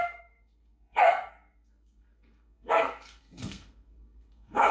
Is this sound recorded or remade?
remade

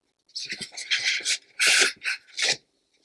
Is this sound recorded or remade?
recorded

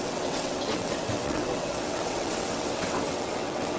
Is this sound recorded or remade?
remade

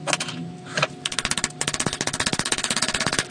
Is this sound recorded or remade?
recorded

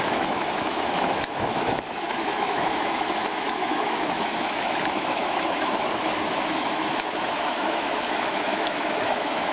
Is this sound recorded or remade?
remade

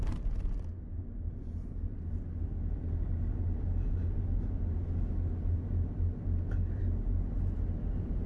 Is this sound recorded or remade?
recorded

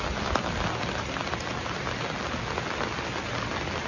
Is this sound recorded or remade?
recorded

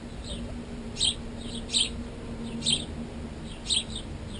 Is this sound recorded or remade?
recorded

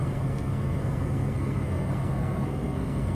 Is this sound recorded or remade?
remade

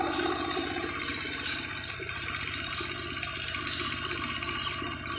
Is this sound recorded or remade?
remade